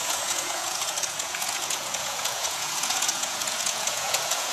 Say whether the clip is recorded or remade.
remade